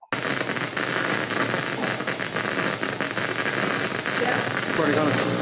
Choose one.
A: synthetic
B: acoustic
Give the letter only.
B